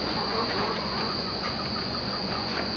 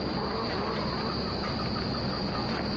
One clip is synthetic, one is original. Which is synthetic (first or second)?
first